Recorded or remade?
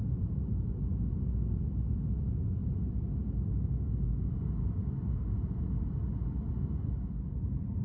recorded